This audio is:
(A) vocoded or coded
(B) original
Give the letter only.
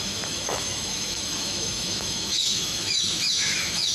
A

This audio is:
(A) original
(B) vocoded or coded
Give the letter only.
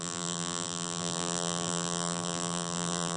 B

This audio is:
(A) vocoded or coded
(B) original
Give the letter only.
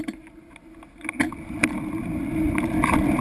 B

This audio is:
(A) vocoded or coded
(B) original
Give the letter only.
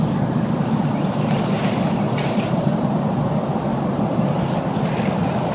B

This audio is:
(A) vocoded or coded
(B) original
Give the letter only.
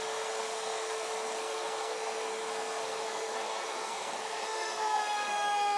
A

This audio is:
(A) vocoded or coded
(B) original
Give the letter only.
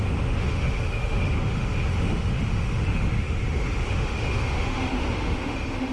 A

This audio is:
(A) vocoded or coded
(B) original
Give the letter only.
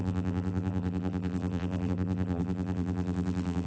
A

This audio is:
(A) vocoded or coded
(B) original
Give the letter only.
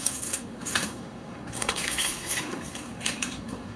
A